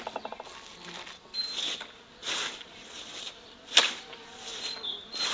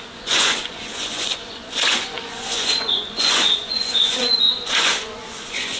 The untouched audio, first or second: first